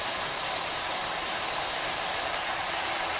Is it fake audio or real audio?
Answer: real